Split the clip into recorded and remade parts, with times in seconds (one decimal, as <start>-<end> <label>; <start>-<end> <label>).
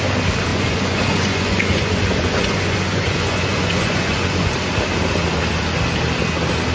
0.0-0.5 recorded; 0.5-4.5 remade; 4.5-6.7 recorded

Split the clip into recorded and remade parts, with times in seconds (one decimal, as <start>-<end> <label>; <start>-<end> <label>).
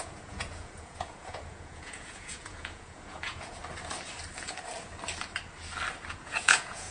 0.0-3.6 remade; 3.6-6.1 recorded; 6.1-6.9 remade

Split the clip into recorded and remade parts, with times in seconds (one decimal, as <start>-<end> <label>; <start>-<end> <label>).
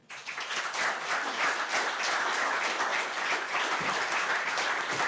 0.0-0.6 remade; 0.6-2.9 recorded; 2.9-3.8 remade; 3.8-5.1 recorded